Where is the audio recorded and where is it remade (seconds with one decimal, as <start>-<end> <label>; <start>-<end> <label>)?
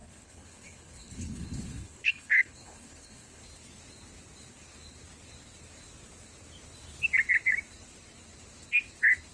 0.0-3.4 remade; 3.4-9.3 recorded